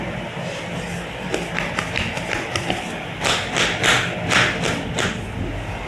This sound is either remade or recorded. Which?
recorded